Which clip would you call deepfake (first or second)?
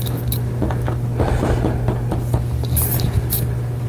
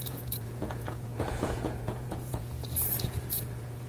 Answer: second